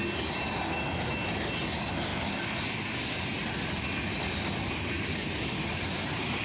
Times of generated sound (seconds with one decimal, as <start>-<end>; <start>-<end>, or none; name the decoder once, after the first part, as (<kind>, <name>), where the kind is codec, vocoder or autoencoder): 2.1-5.9 (vocoder, BigVGAN v2)